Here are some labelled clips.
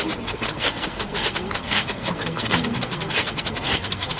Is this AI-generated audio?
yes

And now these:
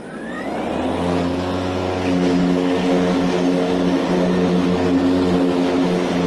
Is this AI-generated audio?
no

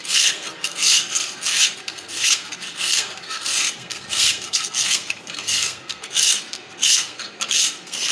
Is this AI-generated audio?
yes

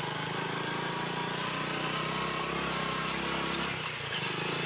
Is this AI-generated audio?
no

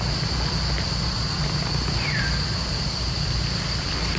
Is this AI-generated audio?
no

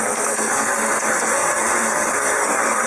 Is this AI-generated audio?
yes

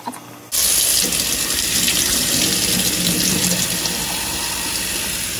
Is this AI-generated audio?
no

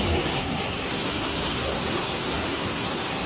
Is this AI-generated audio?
yes